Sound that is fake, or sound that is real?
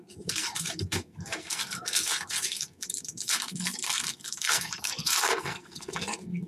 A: fake